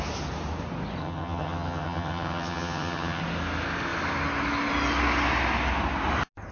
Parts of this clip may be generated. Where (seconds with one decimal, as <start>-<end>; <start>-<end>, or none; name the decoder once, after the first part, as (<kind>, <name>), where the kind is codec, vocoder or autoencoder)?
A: 1.0-3.2 (vocoder, HiFi-GAN)